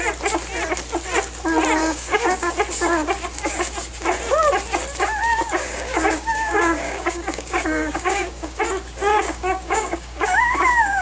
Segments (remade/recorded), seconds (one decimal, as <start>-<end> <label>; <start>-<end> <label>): 0.0-1.8 recorded; 1.8-2.5 remade; 2.5-5.3 recorded; 5.3-8.6 remade; 8.6-9.1 recorded; 9.1-11.0 remade